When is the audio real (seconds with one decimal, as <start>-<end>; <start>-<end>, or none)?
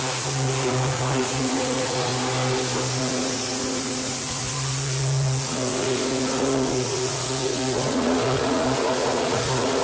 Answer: 2.1-3.0